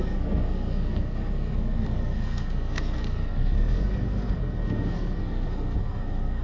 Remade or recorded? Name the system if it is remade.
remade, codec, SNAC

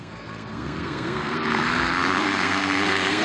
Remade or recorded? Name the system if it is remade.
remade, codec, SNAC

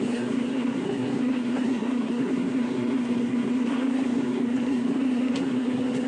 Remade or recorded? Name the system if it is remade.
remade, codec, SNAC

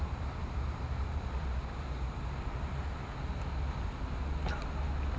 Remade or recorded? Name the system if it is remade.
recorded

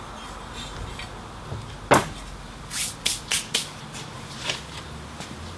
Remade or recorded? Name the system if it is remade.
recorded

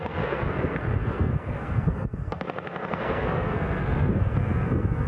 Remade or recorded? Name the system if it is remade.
remade, codec, SNAC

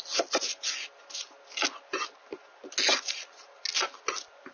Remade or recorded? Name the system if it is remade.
recorded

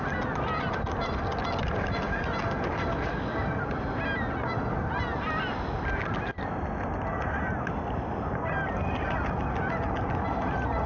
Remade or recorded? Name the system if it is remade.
recorded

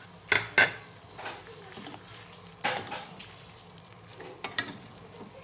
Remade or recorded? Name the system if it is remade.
recorded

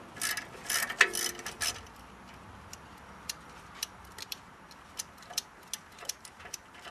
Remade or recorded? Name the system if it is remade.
recorded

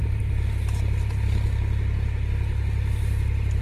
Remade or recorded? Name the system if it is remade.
recorded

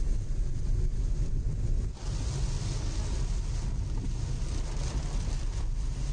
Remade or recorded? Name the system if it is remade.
recorded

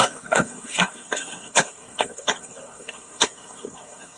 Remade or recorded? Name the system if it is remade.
remade, codec, SNAC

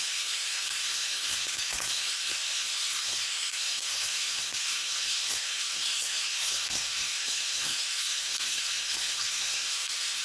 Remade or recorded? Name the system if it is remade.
remade, codec, SNAC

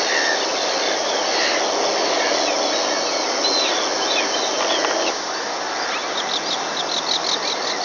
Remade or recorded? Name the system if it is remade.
recorded